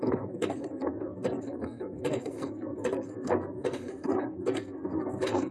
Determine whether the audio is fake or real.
fake